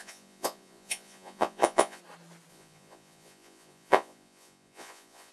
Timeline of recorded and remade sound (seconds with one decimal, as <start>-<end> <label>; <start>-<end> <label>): 0.0-2.0 remade; 2.0-2.5 recorded; 2.5-5.3 remade